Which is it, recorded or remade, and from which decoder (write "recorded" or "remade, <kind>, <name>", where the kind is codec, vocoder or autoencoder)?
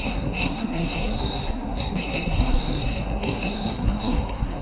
remade, codec, SNAC